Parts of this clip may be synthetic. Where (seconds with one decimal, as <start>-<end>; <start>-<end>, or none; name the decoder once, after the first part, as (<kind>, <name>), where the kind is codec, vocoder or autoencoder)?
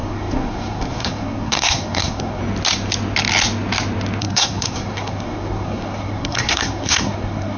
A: 0.0-2.4 (codec, SNAC); 4.2-7.6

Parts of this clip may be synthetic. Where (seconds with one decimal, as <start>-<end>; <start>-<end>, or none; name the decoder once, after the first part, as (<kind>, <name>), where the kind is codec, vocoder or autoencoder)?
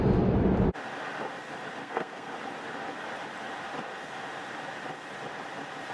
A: 1.8-2.3 (codec, SNAC)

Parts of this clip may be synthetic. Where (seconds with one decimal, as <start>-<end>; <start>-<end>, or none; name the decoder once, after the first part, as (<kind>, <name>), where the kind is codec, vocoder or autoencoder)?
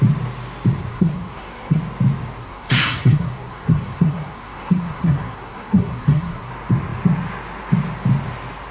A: 0.9-1.8 (codec, SNAC); 2.4-6.5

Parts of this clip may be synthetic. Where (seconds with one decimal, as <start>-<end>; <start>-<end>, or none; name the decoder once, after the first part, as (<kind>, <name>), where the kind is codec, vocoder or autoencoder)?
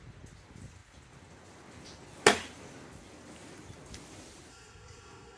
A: 4.5-5.4 (codec, SNAC)